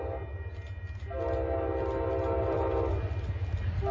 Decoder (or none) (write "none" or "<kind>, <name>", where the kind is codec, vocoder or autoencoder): none